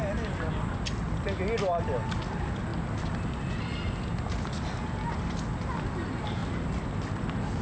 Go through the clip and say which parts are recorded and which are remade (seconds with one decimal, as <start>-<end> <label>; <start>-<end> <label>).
0.0-7.6 recorded